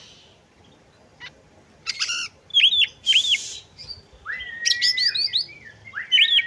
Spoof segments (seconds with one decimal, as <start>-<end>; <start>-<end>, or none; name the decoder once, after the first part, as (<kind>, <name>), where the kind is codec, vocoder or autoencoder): none